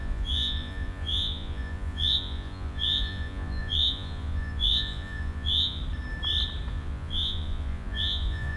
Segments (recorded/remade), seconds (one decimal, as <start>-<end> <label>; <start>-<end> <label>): 0.0-5.8 remade; 5.8-6.7 recorded; 6.7-8.6 remade